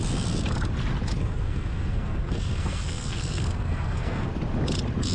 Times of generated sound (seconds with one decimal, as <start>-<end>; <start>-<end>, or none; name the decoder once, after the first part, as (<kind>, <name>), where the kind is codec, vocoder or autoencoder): 1.2-4.3 (codec, SNAC)